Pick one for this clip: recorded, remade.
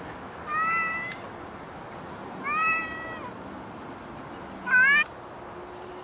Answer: recorded